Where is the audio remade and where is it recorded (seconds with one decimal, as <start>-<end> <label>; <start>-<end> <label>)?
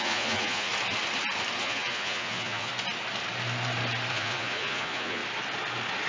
0.0-0.7 remade; 0.7-1.6 recorded; 1.6-2.7 remade; 2.7-4.1 recorded; 4.1-5.2 remade; 5.2-6.1 recorded